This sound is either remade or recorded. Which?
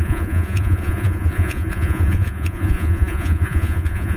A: remade